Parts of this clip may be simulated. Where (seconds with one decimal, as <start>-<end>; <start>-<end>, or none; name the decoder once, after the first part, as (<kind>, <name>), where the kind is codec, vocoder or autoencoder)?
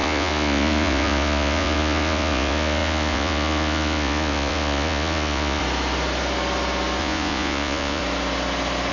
0.0-5.6 (vocoder, Vocos); 7.0-8.0